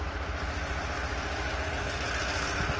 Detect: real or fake real